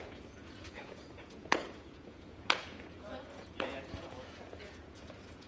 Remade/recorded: remade